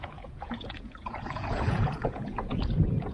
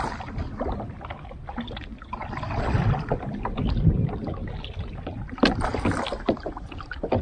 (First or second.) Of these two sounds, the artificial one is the first